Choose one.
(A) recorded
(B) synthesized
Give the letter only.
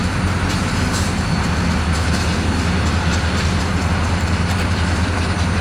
A